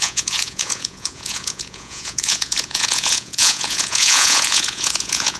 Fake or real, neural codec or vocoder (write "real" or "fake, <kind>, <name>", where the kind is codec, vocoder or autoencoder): fake, vocoder, Vocos